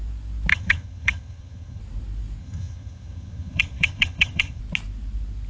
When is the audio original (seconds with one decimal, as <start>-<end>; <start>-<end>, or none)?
0.0-0.5; 1.8-2.4; 4.6-5.5